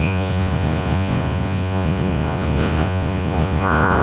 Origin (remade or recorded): remade